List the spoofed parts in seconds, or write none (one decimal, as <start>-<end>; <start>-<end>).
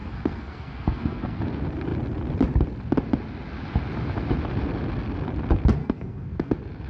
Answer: 0.0-1.4; 5.8-6.5